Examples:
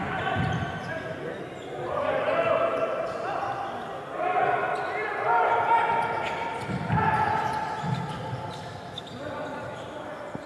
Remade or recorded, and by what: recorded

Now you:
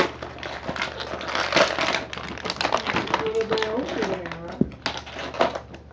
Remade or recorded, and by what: recorded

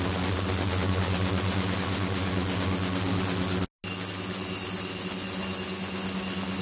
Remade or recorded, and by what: recorded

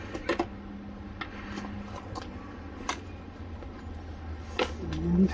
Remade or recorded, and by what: recorded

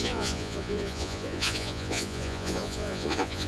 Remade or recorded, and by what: remade, vocoder, Vocos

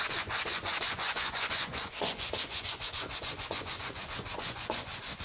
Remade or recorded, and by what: remade, vocoder, Vocos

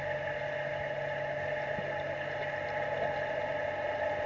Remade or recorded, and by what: recorded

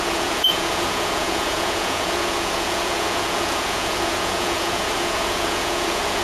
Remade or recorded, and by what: remade, vocoder, Vocos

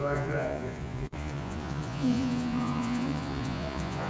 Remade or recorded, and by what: remade, vocoder, Vocos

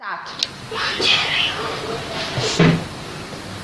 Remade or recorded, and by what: recorded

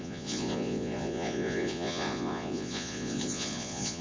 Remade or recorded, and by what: remade, vocoder, Vocos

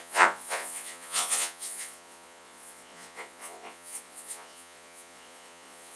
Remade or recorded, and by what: remade, vocoder, Vocos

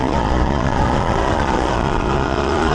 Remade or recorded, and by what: remade, vocoder, Vocos